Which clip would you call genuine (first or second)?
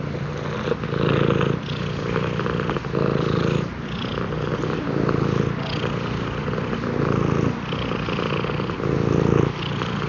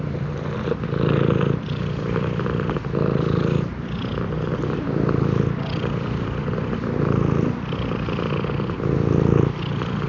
first